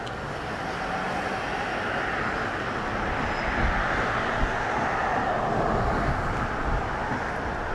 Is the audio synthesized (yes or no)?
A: no